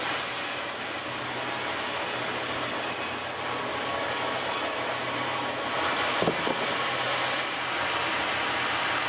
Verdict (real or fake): real